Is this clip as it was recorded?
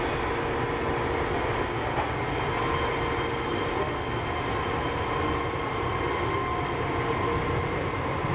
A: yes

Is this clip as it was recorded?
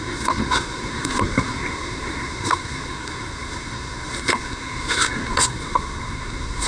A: no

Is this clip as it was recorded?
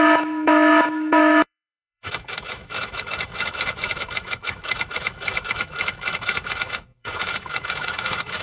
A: no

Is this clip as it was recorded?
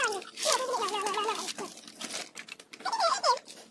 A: no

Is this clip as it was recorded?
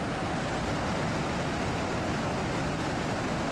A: yes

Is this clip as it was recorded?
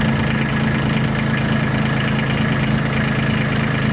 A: yes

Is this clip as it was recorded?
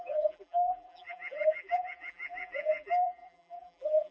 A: no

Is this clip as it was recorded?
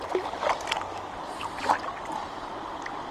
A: yes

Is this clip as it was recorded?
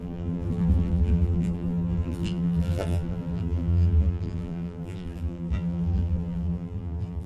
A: no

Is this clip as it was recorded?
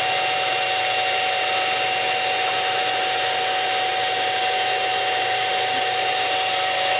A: yes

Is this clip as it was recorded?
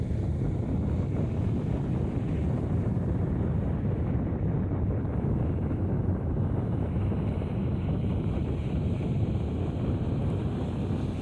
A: yes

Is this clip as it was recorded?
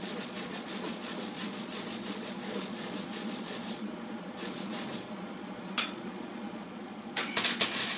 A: no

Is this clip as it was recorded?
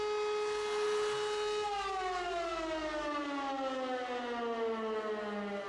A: yes